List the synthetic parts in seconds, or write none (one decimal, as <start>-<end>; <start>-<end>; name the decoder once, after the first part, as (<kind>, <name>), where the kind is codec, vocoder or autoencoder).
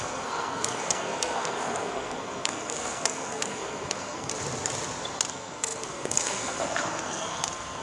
0.0-4.3 (codec, SNAC); 5.3-7.8